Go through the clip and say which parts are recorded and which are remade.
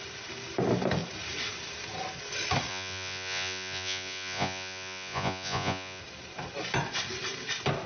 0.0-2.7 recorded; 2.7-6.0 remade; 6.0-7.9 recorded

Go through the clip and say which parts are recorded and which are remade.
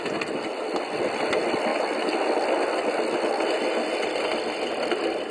0.0-5.3 recorded